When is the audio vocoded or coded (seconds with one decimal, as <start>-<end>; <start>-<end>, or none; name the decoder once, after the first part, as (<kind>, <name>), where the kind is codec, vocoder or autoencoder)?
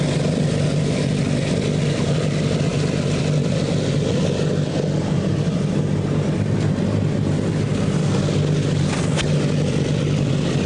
none